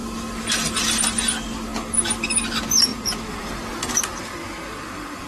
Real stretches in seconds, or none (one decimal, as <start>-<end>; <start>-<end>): 0.0-5.3